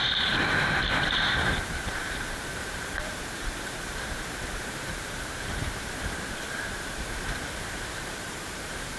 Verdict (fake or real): fake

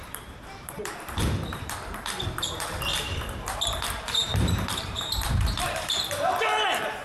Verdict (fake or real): fake